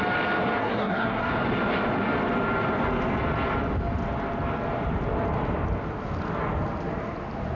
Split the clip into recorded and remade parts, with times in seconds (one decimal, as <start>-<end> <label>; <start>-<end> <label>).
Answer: 0.0-0.6 recorded; 0.6-1.3 remade; 1.3-7.6 recorded